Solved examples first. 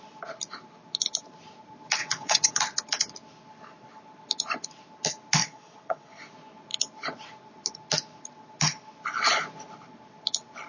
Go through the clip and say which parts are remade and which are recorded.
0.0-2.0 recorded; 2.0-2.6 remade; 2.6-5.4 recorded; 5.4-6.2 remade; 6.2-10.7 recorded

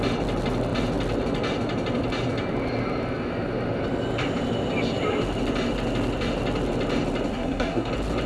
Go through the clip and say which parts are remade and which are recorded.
0.0-7.3 recorded; 7.3-7.9 remade; 7.9-8.3 recorded